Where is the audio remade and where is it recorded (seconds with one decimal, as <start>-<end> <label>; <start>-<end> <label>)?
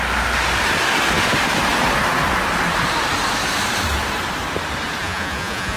0.0-5.0 recorded; 5.0-5.8 remade